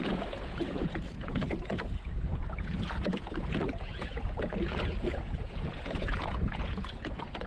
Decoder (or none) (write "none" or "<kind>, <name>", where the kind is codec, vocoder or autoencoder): vocoder, Vocos